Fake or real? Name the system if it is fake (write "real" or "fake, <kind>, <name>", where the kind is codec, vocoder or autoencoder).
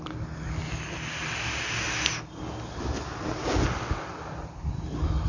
real